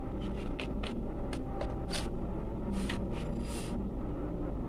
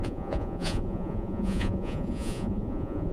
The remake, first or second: second